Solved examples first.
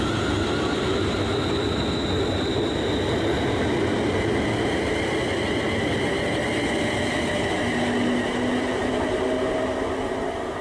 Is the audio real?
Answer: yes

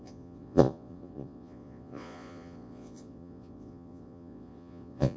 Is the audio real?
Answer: no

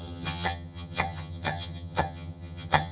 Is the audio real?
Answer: no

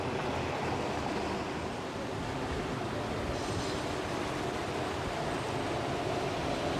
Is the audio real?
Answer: yes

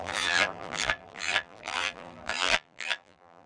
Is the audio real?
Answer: no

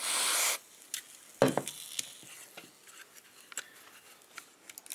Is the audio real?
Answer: yes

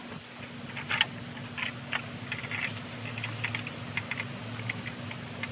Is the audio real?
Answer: yes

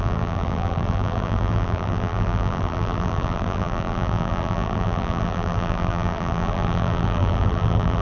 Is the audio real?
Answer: no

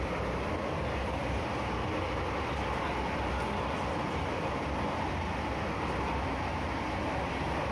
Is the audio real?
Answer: yes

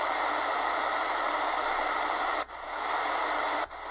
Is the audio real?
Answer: yes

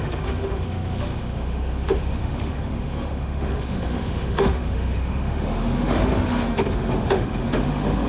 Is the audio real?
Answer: no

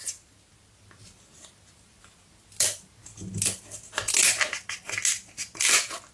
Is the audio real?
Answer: yes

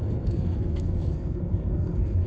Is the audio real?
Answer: no